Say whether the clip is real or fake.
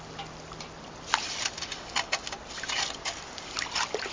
real